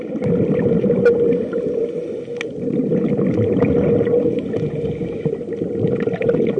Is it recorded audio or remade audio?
recorded